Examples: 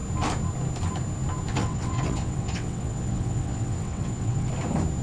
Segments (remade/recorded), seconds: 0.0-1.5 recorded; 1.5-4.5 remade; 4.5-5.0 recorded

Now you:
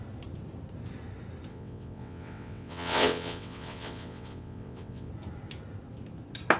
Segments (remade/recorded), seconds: 0.0-1.5 recorded; 1.5-5.1 remade; 5.1-6.6 recorded

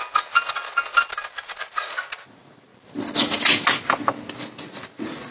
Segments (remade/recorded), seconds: 0.0-1.6 recorded; 1.6-2.7 remade; 2.7-4.6 recorded; 4.6-5.3 remade